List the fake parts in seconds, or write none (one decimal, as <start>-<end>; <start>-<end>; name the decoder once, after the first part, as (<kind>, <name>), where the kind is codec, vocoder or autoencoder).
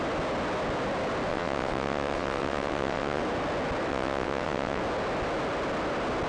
1.3-3.2 (vocoder, WaveNeXt); 3.9-4.8